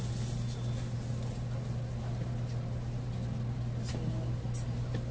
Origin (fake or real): real